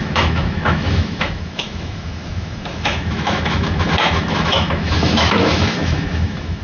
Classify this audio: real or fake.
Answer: fake